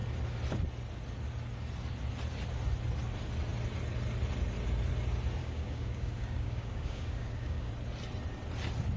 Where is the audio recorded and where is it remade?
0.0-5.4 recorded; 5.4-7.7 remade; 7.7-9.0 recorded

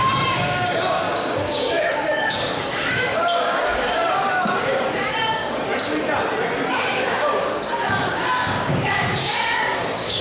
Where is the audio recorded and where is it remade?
0.0-5.6 remade; 5.6-6.7 recorded; 6.7-10.2 remade

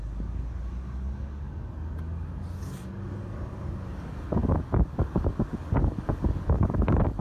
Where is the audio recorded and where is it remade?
0.0-7.2 remade

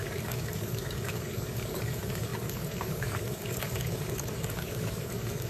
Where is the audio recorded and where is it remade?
0.0-5.5 remade

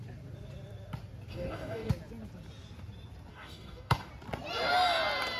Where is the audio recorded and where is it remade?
0.0-1.3 recorded; 1.3-1.9 remade; 1.9-3.3 recorded; 3.3-4.1 remade; 4.1-5.4 recorded